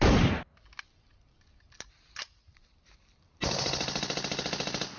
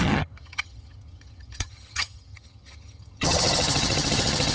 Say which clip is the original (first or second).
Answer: first